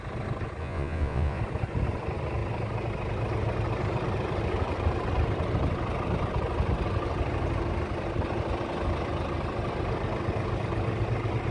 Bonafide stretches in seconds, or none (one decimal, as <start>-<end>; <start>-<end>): 0.0-0.6; 1.4-11.5